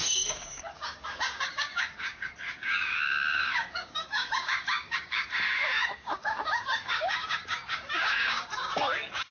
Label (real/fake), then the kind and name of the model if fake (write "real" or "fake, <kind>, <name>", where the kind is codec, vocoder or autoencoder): fake, codec, DAC